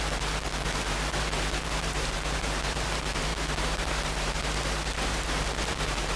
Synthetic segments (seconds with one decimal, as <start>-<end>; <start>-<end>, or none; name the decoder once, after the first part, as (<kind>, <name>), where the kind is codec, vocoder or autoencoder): 0.0-6.2 (vocoder, BigVGAN v2)

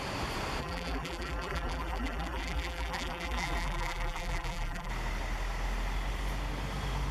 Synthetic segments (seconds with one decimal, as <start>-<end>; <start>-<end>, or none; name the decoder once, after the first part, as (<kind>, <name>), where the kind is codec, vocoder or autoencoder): 0.6-4.9 (vocoder, BigVGAN v2)

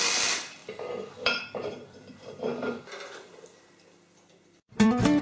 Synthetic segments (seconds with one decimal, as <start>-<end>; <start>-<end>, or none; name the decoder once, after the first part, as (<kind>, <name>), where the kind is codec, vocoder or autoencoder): 0.0-5.2 (vocoder, BigVGAN v2)

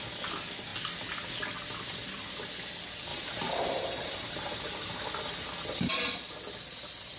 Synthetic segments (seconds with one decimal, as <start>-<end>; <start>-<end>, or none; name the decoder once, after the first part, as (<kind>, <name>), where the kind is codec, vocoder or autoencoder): 3.1-5.9 (vocoder, BigVGAN v2)

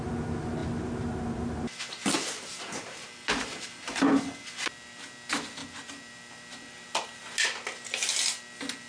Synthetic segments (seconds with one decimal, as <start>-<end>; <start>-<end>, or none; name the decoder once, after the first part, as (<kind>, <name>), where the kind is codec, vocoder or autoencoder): 0.6-4.7 (vocoder, BigVGAN v2); 5.6-7.2

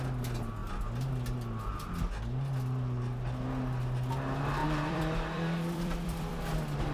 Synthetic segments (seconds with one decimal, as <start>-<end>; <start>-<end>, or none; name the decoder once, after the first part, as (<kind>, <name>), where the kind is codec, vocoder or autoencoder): 4.6-6.3 (vocoder, BigVGAN v2)